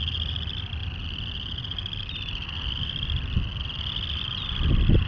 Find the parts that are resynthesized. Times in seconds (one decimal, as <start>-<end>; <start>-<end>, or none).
none